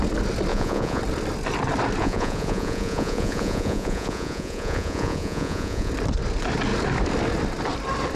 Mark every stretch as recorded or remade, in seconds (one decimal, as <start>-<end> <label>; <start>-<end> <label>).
0.0-0.5 recorded; 0.5-1.0 remade; 1.0-2.0 recorded; 2.0-5.9 remade; 5.9-8.2 recorded